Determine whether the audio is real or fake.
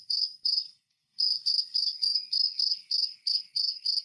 fake